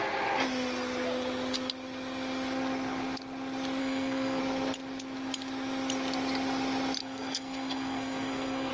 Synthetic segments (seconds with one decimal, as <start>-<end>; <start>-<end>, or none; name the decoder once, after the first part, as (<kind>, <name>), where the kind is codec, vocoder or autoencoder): 3.8-4.4 (codec, SNAC); 7.0-8.7